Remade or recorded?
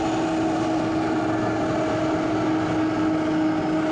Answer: recorded